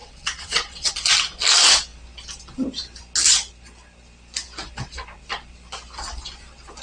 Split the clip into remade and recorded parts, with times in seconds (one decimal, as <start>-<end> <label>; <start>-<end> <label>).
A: 0.0-0.9 remade; 0.9-6.8 recorded